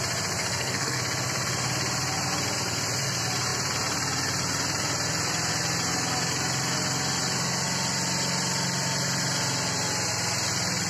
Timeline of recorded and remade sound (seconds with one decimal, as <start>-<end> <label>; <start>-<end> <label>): 0.0-0.4 recorded; 0.4-1.0 remade; 1.0-10.9 recorded

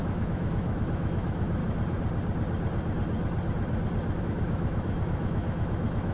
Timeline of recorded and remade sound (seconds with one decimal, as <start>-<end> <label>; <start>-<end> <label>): 0.0-1.6 remade; 1.6-4.2 recorded; 4.2-6.1 remade

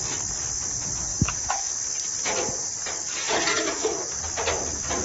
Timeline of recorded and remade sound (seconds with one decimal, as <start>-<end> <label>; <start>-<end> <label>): 0.0-1.1 recorded; 1.1-1.7 remade; 1.7-3.5 recorded; 3.5-4.1 remade; 4.1-5.0 recorded

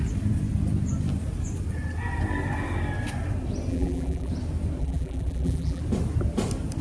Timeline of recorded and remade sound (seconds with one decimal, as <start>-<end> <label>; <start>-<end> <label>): 0.0-3.7 recorded; 3.7-4.3 remade; 4.3-4.8 recorded; 4.8-5.8 remade; 5.8-6.8 recorded